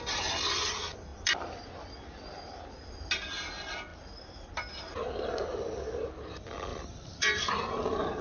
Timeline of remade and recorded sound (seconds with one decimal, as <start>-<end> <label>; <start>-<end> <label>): 0.0-6.7 recorded; 6.7-7.4 remade; 7.4-8.2 recorded